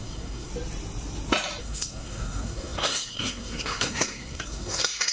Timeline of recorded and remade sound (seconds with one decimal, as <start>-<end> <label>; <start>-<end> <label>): 0.0-0.5 remade; 0.5-1.6 recorded; 1.6-5.1 remade